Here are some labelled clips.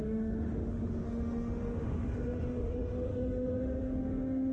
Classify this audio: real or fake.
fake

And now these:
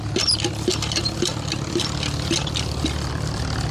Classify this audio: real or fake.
fake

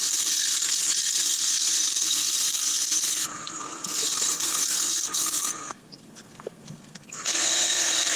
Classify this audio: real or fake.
fake